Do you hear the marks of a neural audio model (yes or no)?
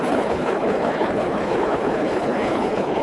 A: yes